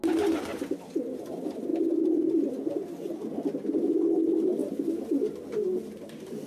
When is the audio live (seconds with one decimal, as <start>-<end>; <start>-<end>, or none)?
0.0-6.5